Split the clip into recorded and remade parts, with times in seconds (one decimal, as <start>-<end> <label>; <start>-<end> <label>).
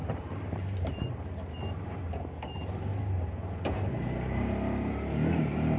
0.0-2.0 remade; 2.0-2.5 recorded; 2.5-2.9 remade; 2.9-3.9 recorded; 3.9-5.8 remade